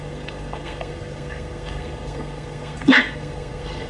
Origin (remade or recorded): remade